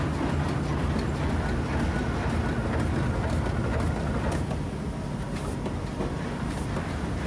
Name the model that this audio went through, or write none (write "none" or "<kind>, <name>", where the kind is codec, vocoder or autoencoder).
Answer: none